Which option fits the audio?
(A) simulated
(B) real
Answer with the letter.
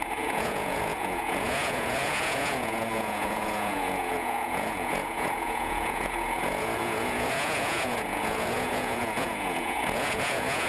A